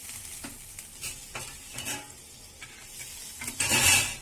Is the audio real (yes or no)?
yes